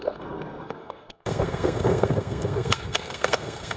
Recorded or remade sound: remade